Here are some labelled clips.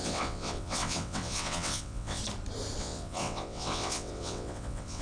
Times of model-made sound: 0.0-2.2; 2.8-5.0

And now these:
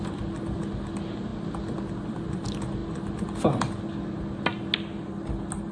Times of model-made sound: none

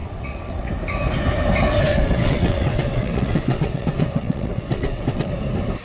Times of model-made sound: 0.0-0.7; 1.9-5.3

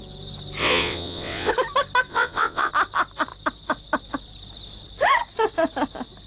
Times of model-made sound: 0.6-1.5; 2.1-2.7